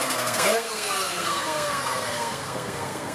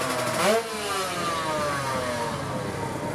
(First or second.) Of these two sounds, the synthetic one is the first